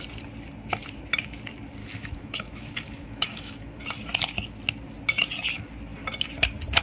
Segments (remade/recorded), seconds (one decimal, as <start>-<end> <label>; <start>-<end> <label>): 0.0-1.8 recorded; 1.8-3.8 remade; 3.8-6.8 recorded